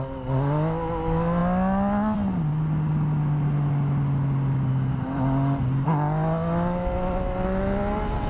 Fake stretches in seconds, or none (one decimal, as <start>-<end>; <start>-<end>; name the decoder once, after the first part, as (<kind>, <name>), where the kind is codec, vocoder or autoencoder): none